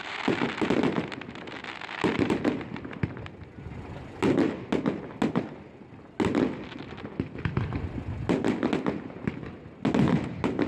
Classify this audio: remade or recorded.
recorded